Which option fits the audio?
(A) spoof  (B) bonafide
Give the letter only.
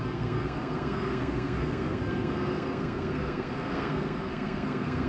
A